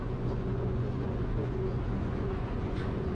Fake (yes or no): yes